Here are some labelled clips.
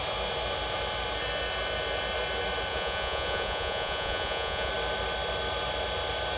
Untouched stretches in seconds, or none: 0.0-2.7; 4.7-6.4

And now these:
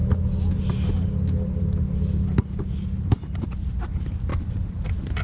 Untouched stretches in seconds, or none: 0.0-5.2